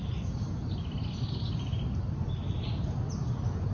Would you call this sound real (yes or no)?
yes